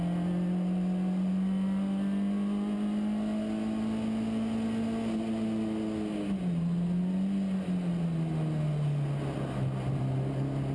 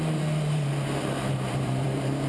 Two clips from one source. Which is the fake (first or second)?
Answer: second